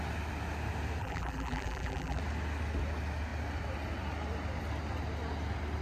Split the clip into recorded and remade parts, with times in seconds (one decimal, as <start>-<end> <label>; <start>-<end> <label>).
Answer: 0.0-1.0 recorded; 1.0-2.2 remade; 2.2-5.8 recorded